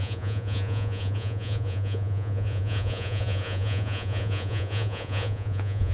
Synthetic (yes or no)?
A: yes